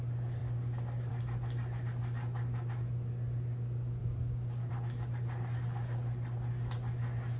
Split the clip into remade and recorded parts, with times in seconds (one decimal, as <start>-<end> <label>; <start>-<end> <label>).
0.0-4.0 recorded; 4.0-4.7 remade; 4.7-7.4 recorded